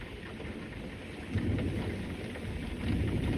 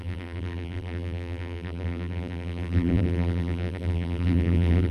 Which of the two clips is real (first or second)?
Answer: first